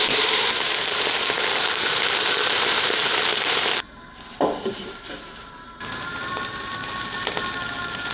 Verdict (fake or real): fake